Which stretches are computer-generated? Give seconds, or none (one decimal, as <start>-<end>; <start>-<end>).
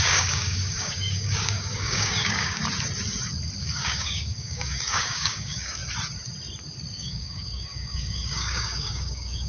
0.0-2.6; 3.6-5.8; 6.9-9.5